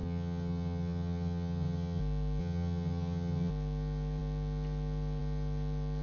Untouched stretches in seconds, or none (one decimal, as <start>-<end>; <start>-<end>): 2.0-2.4; 3.5-6.0